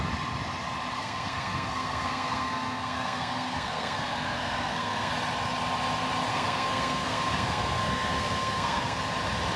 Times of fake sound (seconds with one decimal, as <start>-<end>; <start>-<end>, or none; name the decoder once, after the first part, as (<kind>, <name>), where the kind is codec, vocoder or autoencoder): 1.0-5.1 (codec, SNAC); 6.3-9.0